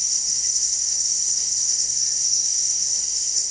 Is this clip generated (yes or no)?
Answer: yes